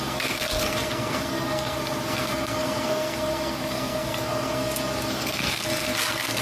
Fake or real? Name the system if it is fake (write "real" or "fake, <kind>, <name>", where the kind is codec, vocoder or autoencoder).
fake, codec, SNAC